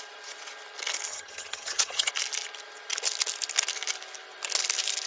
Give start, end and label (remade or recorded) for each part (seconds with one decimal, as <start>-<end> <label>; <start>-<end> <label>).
0.0-1.1 recorded; 1.1-2.1 remade; 2.1-5.1 recorded